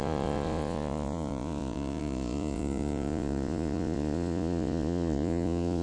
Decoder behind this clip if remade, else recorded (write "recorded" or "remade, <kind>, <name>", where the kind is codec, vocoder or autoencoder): remade, vocoder, Vocos